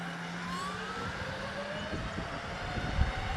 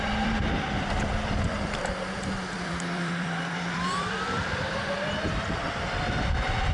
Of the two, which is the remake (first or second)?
second